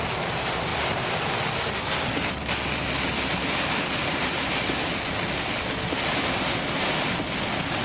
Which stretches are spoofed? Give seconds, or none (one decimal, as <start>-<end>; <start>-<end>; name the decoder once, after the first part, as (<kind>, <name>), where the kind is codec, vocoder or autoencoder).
none